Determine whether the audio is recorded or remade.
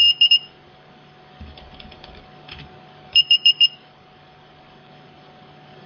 remade